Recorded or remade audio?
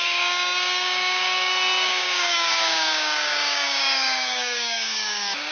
remade